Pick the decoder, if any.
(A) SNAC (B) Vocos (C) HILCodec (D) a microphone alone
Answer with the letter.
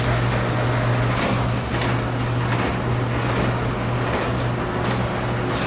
D